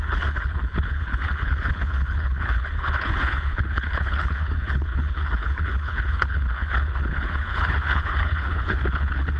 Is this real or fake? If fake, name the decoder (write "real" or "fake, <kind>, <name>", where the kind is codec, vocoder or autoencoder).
fake, codec, HILCodec